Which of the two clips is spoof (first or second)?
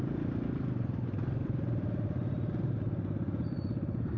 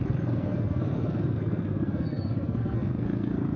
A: second